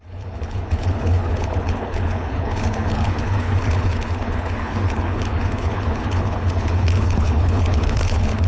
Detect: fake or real fake